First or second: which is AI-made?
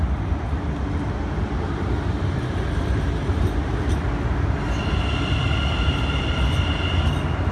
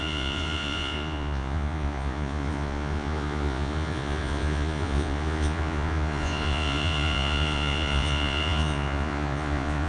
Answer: second